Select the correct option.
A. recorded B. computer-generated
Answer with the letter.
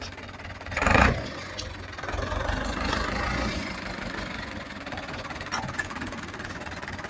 B